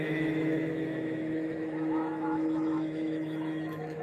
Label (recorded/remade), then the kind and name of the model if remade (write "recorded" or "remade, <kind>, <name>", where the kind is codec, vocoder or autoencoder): remade, autoencoder, DAC-VAE